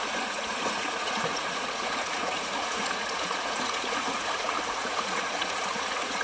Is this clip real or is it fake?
fake